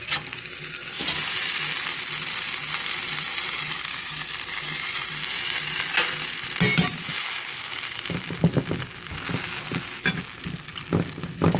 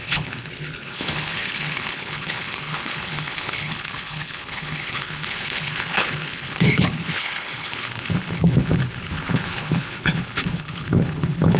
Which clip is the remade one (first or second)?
second